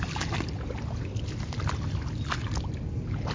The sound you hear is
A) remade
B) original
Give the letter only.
B